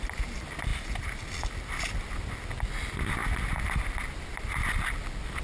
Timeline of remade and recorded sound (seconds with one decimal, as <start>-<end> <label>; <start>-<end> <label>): 0.0-5.4 recorded